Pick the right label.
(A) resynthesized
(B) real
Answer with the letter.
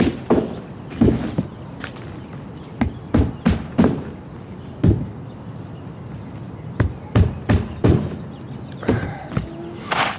B